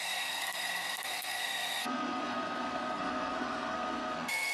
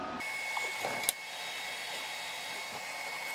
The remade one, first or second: first